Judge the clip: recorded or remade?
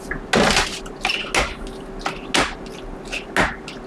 recorded